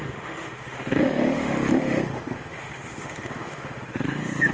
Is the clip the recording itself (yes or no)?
no